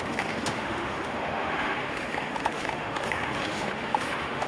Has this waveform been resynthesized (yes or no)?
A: yes